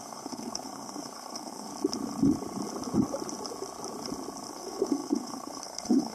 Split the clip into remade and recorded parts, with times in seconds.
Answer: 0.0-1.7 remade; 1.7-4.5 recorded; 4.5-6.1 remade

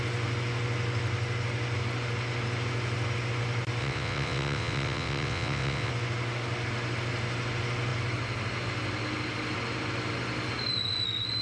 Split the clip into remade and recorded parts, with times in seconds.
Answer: 0.0-3.8 recorded; 3.8-5.9 remade; 5.9-11.4 recorded

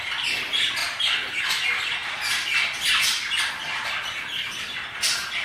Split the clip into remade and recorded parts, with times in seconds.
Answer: 0.0-0.8 recorded; 0.8-1.4 remade; 1.4-5.4 recorded

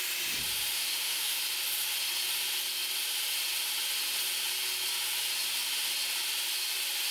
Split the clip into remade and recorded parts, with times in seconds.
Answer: 0.0-0.7 recorded; 0.7-1.4 remade; 1.4-7.1 recorded

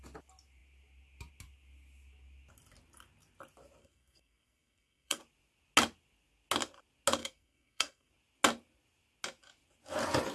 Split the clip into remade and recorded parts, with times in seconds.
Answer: 0.0-3.8 recorded; 3.8-5.2 remade; 5.2-7.2 recorded; 7.2-8.1 remade; 8.1-10.3 recorded

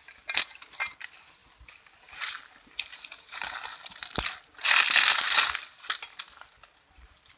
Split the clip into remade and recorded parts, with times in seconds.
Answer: 0.0-7.4 recorded

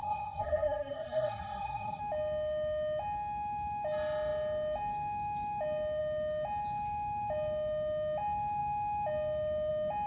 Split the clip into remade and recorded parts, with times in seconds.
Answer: 0.0-2.0 remade; 2.0-10.1 recorded

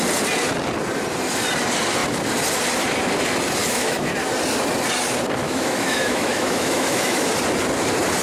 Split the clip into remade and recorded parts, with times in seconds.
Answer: 0.0-3.6 recorded; 3.6-4.1 remade; 4.1-5.4 recorded; 5.4-7.3 remade; 7.3-8.2 recorded